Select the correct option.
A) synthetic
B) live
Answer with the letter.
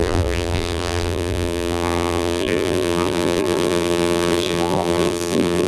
A